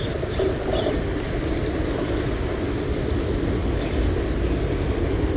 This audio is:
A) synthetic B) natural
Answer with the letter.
B